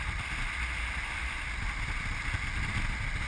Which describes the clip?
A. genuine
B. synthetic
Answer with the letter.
A